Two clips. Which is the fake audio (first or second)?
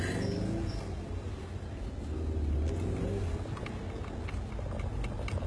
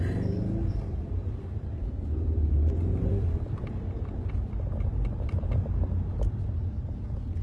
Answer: second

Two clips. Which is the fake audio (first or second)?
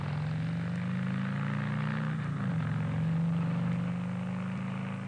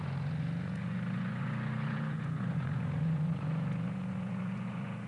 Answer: second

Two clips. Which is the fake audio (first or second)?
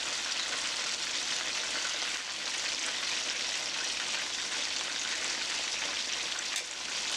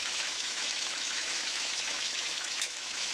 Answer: second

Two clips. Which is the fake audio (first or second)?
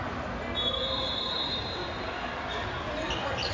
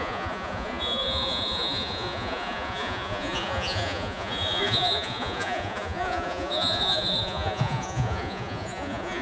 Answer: second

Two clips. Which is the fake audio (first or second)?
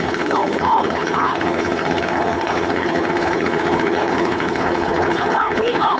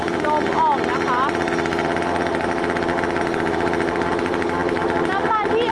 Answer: first